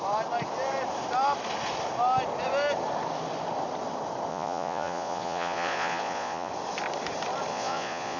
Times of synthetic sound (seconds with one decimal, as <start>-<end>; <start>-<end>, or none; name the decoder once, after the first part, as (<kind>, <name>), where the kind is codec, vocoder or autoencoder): 4.3-6.5 (vocoder, Vocos); 7.5-8.2